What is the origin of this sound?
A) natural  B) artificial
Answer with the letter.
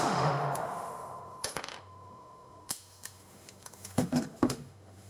B